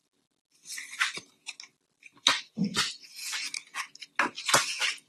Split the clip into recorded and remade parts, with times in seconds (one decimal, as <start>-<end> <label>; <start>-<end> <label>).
0.0-5.1 recorded